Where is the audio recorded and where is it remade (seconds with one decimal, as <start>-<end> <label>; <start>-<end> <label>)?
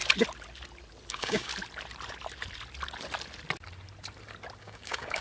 0.0-1.1 recorded; 1.1-1.5 remade; 1.5-4.6 recorded; 4.6-5.2 remade